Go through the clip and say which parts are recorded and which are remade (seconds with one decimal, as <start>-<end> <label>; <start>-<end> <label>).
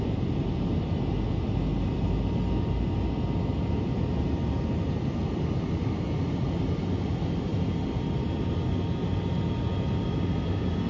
0.0-7.5 recorded; 7.5-8.3 remade; 8.3-10.9 recorded